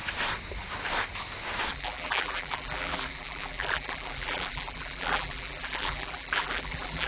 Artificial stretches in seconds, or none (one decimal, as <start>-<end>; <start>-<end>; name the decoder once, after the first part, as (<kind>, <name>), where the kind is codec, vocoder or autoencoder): 1.7-7.1 (vocoder, BigVGAN v2)